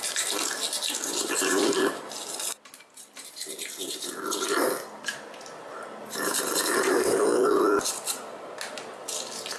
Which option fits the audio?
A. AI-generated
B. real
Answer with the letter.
B